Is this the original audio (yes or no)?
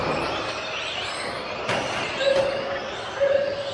yes